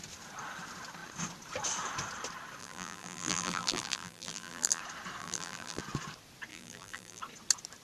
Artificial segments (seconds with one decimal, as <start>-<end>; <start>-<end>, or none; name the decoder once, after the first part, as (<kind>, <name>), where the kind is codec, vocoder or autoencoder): 2.6-4.8 (vocoder, BigVGAN v2); 5.2-5.8; 6.5-7.2